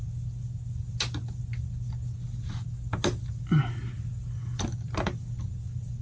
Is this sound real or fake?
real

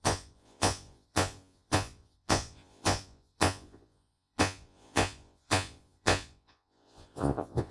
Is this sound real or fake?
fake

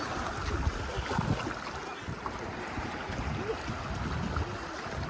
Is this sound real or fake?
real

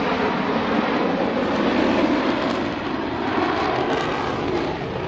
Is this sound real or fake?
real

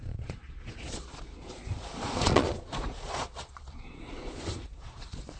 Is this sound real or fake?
fake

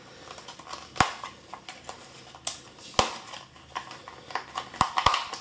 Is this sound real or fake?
real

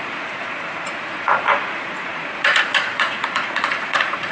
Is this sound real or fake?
fake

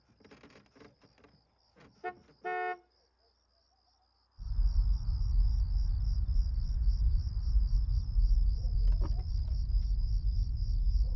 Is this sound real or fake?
real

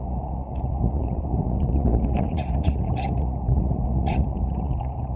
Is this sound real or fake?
fake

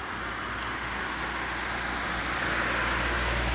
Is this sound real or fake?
real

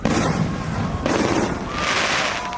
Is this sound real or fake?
real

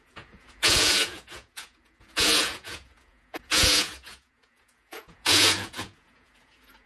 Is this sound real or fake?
fake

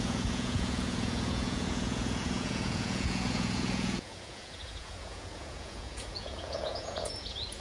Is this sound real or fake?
fake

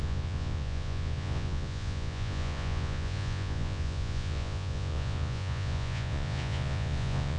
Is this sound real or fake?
fake